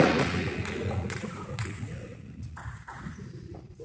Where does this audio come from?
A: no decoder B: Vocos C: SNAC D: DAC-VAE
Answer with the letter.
B